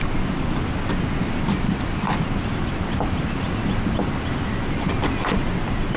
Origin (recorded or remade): recorded